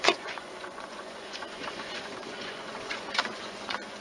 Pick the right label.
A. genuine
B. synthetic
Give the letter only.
B